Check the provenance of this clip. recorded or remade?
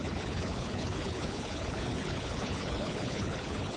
remade